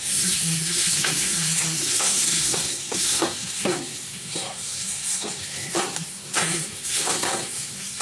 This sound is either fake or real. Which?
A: fake